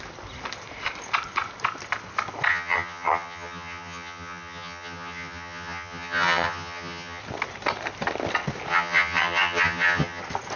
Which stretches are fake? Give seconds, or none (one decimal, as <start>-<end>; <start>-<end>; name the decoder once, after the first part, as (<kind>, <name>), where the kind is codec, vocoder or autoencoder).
2.5-7.2 (vocoder, HiFi-GAN); 8.7-10.2